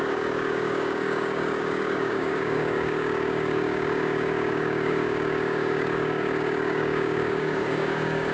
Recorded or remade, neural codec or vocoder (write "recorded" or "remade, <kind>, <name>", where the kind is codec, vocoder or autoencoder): remade, codec, DAC